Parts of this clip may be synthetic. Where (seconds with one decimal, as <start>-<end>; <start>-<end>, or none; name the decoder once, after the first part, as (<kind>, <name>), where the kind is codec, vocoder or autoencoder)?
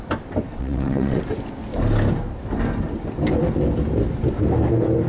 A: 0.5-1.2 (vocoder, WaveNeXt)